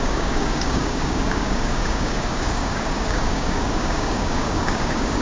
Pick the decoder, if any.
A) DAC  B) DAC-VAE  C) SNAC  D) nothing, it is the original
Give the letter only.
A